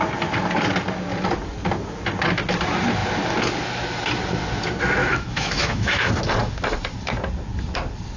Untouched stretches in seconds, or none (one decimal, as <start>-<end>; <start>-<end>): 0.0-5.0; 6.1-8.2